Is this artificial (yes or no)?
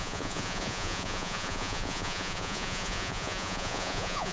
yes